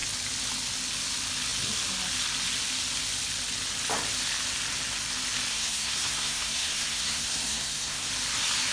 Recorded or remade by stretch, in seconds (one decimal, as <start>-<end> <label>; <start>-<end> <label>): 0.0-5.5 recorded; 5.5-8.1 remade; 8.1-8.7 recorded

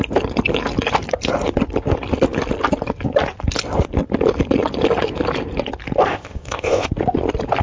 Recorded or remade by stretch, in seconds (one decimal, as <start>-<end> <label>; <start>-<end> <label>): 0.0-6.1 recorded; 6.1-6.9 remade; 6.9-7.6 recorded

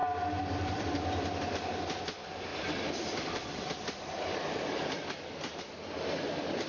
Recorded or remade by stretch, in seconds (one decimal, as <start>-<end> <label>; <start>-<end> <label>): 0.0-0.8 remade; 0.8-2.5 recorded; 2.5-5.6 remade; 5.6-6.7 recorded

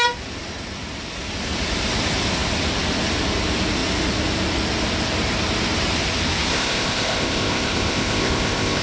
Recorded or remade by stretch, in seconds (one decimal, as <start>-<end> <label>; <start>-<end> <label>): 0.0-6.5 recorded; 6.5-8.8 remade

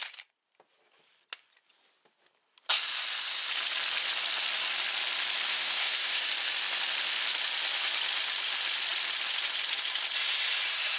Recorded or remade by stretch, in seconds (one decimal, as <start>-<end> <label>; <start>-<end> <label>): 0.0-5.5 recorded; 5.5-6.2 remade; 6.2-11.0 recorded

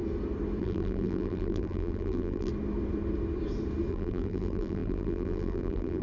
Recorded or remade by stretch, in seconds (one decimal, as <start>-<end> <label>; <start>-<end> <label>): 0.0-0.6 recorded; 0.6-2.5 remade; 2.5-3.9 recorded; 3.9-6.0 remade

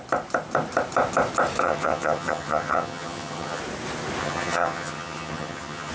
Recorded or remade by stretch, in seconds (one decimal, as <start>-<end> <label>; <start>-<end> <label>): 0.0-1.6 recorded; 1.6-3.6 remade; 3.6-4.2 recorded; 4.2-5.9 remade

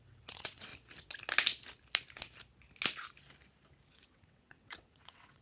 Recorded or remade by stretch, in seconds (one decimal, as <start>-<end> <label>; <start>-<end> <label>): 0.0-0.7 remade; 0.7-3.9 recorded; 3.9-5.4 remade